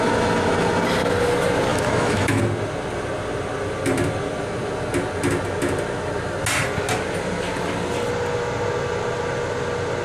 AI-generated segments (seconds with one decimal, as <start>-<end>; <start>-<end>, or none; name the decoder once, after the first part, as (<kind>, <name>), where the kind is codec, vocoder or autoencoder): 1.7-2.4 (autoencoder, DAC-VAE)